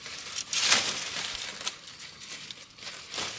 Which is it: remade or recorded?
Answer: recorded